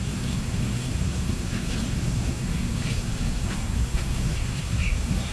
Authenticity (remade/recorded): remade